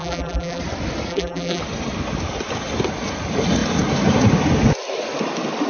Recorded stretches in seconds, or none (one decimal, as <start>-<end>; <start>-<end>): 0.6-1.1; 1.6-5.7